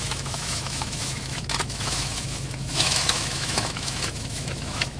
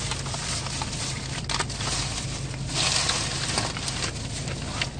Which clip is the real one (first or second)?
second